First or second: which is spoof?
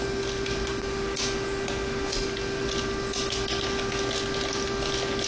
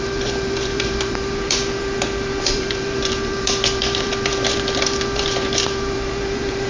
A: second